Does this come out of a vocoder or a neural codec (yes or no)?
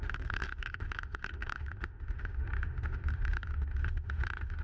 yes